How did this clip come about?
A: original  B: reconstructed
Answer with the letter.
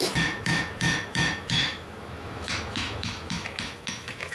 B